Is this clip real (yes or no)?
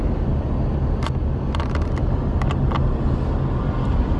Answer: yes